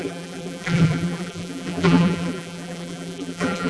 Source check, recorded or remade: remade